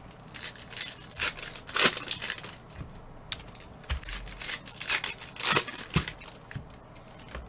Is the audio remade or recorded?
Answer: recorded